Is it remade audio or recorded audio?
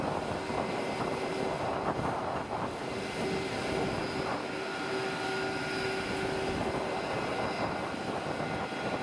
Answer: recorded